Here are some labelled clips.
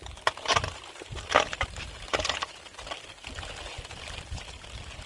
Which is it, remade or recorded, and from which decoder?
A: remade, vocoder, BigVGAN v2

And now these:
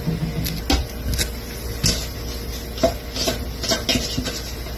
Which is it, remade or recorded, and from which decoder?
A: recorded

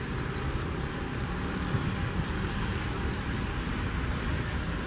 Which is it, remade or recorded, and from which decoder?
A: recorded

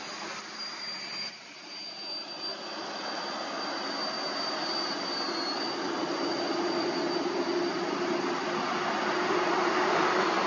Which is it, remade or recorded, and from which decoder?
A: recorded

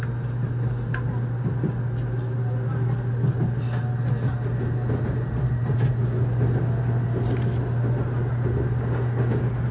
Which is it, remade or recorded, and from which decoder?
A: recorded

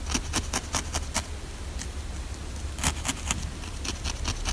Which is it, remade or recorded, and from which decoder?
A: recorded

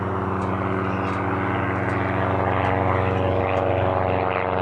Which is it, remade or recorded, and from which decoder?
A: recorded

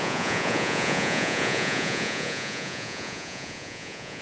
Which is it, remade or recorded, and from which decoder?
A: remade, vocoder, Vocos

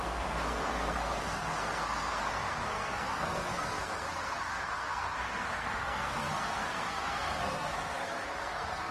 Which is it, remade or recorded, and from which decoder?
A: remade, codec, SNAC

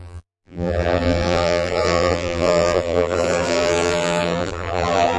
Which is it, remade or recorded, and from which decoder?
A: remade, vocoder, BigVGAN v2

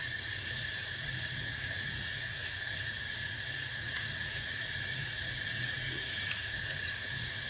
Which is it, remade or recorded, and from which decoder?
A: remade, vocoder, Vocos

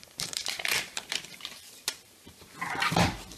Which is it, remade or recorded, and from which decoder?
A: remade, vocoder, BigVGAN v2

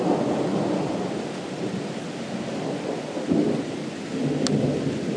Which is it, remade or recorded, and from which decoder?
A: recorded